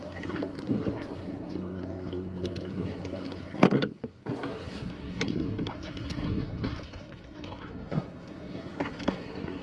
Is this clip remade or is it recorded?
remade